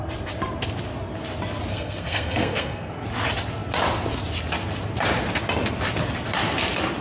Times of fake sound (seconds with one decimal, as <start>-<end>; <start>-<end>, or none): 1.7-2.9